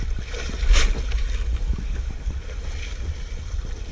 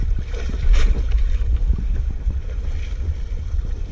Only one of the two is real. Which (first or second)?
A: first